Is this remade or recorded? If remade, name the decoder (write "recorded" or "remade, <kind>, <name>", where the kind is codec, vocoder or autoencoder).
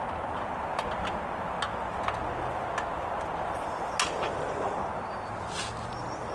recorded